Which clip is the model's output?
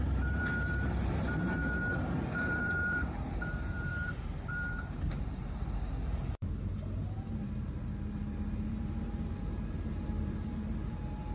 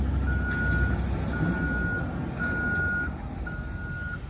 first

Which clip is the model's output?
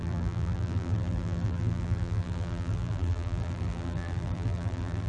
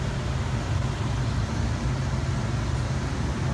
first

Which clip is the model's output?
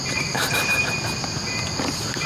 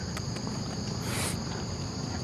second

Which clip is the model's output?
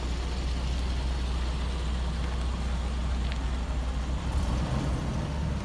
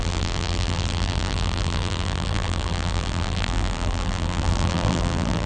second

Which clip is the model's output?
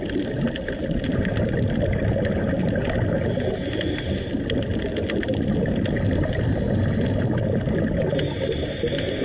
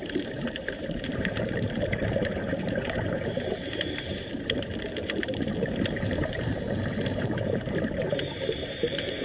second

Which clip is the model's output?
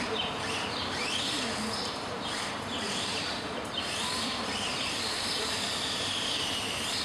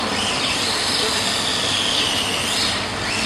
first